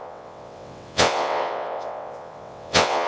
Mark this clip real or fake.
fake